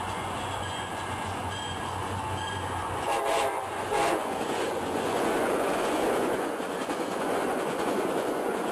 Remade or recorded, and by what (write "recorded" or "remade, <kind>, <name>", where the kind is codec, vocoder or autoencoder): remade, vocoder, Vocos